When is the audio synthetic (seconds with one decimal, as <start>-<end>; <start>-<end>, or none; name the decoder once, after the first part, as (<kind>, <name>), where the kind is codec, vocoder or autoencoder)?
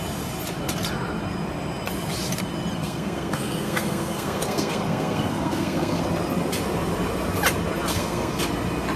2.8-6.0 (codec, SNAC); 7.9-8.4